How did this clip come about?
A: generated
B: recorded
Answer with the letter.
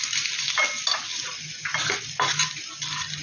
B